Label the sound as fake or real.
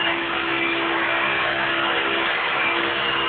fake